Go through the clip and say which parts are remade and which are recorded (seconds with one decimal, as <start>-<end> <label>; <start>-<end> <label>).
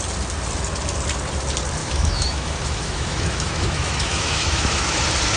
0.0-1.8 recorded; 1.8-5.0 remade; 5.0-5.4 recorded